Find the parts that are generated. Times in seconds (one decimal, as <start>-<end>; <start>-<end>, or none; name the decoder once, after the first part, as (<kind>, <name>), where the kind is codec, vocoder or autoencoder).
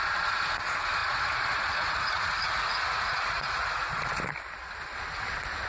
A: 1.0-4.2 (vocoder, Vocos)